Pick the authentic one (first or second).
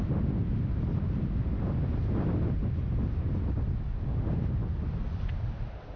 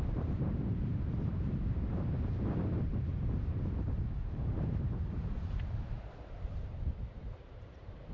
first